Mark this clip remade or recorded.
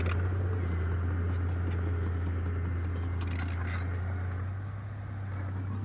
recorded